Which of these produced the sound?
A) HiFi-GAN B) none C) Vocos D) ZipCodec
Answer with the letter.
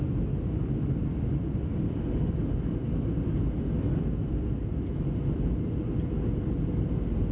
B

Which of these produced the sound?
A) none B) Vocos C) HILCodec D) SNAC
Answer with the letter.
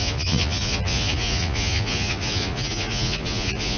B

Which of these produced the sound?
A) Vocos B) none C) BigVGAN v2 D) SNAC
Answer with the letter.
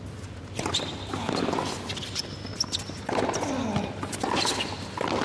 B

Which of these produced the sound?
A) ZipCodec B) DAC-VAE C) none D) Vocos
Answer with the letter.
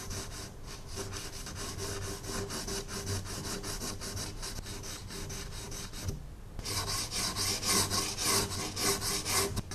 C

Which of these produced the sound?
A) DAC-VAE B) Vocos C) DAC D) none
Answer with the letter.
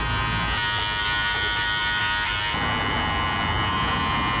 D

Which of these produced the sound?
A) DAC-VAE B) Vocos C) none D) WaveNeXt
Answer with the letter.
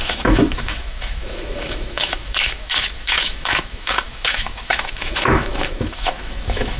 A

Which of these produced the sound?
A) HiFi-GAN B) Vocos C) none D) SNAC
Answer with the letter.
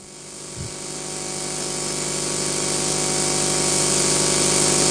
C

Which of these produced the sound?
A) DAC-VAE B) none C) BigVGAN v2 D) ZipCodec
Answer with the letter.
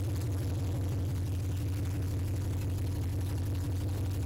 B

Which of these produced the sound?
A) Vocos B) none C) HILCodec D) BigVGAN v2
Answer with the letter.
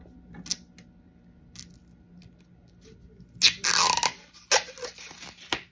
B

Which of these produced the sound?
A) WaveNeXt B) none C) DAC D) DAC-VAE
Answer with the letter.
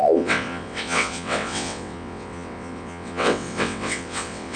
A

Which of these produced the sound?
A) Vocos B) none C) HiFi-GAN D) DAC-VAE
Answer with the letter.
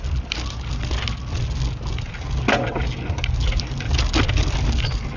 B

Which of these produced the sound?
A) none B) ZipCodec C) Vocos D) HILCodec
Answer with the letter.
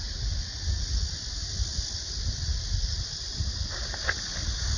A